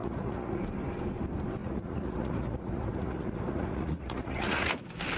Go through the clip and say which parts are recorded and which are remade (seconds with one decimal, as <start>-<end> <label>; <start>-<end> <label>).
0.0-0.6 remade; 0.6-1.6 recorded; 1.6-4.7 remade; 4.7-5.2 recorded